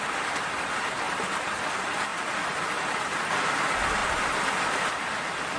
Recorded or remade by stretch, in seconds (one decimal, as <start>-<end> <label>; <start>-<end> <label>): 0.0-2.1 remade; 2.1-3.3 recorded; 3.3-5.6 remade